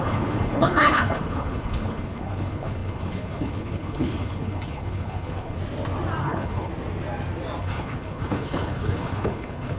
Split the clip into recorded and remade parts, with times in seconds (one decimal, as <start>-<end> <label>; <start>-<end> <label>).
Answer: 0.0-5.6 remade; 5.6-6.2 recorded; 6.2-6.7 remade; 6.7-7.6 recorded; 7.6-9.8 remade